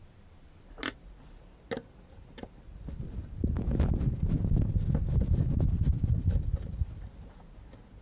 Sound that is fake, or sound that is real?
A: real